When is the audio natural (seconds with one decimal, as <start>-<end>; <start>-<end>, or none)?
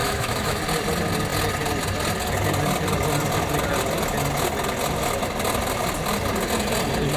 0.6-7.2